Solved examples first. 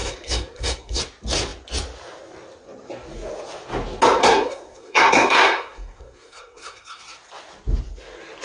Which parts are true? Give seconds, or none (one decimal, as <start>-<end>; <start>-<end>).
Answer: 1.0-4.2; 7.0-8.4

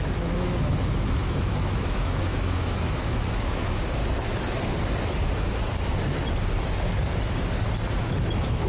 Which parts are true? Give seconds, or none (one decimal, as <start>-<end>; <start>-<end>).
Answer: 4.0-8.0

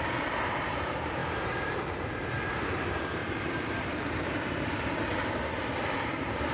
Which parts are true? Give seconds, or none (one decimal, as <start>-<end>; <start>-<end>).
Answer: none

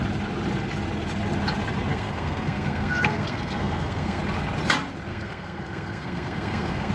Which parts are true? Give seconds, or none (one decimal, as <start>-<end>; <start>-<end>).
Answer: 0.0-1.9; 4.2-5.1

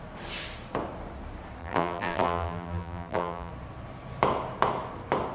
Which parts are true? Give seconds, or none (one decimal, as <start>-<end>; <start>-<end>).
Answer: 0.0-1.6; 3.5-5.3